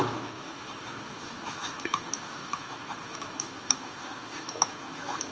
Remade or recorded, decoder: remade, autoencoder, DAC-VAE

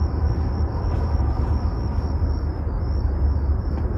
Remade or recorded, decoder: recorded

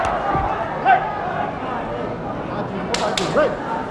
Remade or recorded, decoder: recorded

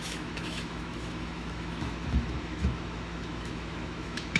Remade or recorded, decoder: remade, autoencoder, DAC-VAE